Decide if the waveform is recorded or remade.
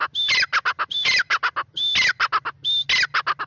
recorded